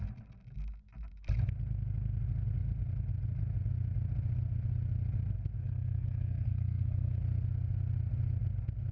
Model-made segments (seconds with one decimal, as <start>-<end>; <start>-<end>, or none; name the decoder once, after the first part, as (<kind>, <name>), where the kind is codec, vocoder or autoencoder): 5.6-7.2 (codec, SNAC)